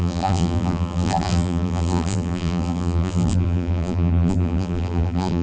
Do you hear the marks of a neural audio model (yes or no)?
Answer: yes